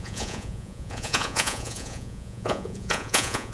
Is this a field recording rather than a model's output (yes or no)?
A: no